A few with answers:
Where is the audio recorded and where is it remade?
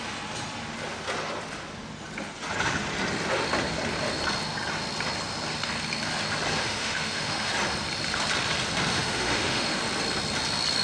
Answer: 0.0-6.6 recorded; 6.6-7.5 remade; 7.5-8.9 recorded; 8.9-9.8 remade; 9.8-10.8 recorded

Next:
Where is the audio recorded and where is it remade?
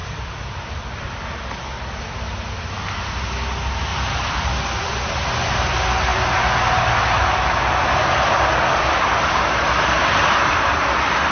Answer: 0.0-1.8 remade; 1.8-3.9 recorded; 3.9-4.5 remade; 4.5-11.3 recorded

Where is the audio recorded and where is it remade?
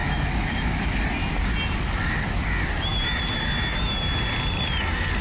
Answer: 0.0-1.0 remade; 1.0-5.2 recorded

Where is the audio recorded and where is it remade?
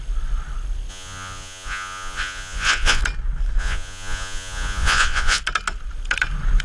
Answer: 0.0-0.9 recorded; 0.9-3.0 remade; 3.0-3.6 recorded; 3.6-5.4 remade; 5.4-6.6 recorded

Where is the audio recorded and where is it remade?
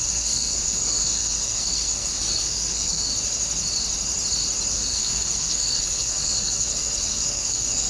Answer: 0.0-3.1 remade; 3.1-4.7 recorded; 4.7-7.9 remade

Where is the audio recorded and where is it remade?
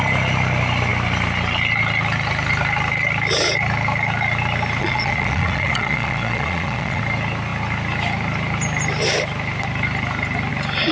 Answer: 0.0-4.8 recorded; 4.8-7.0 remade; 7.0-10.9 recorded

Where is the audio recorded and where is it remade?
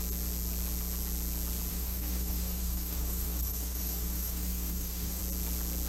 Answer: 0.0-1.7 recorded; 1.7-5.2 remade; 5.2-5.9 recorded